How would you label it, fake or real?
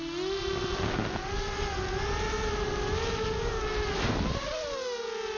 real